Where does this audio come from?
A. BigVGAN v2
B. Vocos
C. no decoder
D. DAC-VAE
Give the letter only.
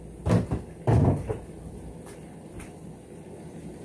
A